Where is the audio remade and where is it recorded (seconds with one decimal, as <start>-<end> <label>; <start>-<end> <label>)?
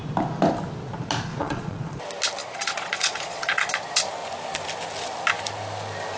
0.0-1.3 recorded; 1.3-2.0 remade; 2.0-2.4 recorded; 2.4-3.8 remade; 3.8-6.2 recorded